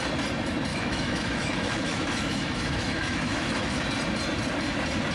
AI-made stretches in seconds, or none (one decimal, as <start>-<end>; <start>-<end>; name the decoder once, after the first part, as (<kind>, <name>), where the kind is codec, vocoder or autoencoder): 0.7-3.8 (autoencoder, DAC-VAE)